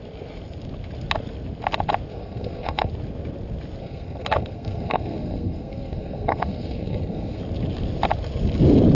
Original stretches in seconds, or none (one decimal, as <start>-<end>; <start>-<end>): 0.0-2.1; 2.9-3.8; 7.4-8.9